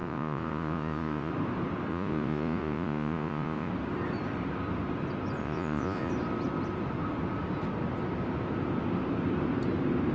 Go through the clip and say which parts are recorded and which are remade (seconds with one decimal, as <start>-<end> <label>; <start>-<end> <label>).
0.0-1.3 remade; 1.3-1.9 recorded; 1.9-3.7 remade; 3.7-5.4 recorded; 5.4-6.1 remade; 6.1-10.1 recorded